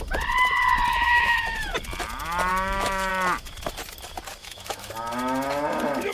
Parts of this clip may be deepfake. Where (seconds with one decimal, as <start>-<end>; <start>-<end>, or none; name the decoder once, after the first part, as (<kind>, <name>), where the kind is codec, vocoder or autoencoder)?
0.9-1.4 (autoencoder, DAC-VAE); 2.5-3.1; 4.4-4.9